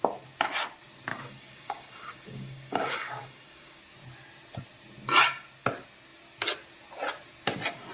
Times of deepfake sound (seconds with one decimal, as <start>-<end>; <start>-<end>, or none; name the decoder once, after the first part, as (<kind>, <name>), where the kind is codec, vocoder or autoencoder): 1.1-3.8 (codec, DAC)